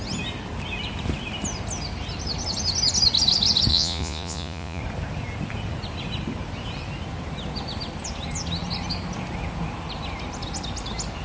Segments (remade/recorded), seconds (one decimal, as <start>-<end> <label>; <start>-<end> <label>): 0.0-3.7 recorded; 3.7-4.8 remade; 4.8-11.2 recorded

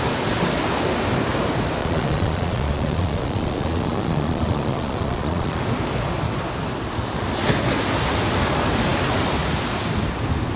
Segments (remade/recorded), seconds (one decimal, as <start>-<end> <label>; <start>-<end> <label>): 0.0-1.8 recorded; 1.8-5.6 remade; 5.6-10.6 recorded

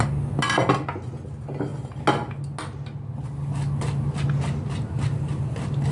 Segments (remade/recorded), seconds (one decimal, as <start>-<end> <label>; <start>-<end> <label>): 0.0-5.9 recorded

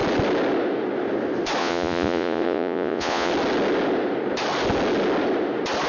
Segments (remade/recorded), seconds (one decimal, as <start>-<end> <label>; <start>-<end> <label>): 0.0-1.6 recorded; 1.6-3.3 remade; 3.3-5.9 recorded